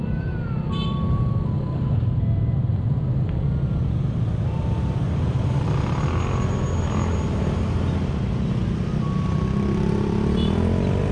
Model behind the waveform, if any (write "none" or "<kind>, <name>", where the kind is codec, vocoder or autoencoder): none